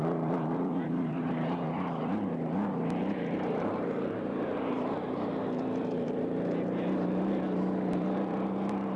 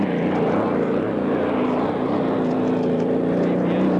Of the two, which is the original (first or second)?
second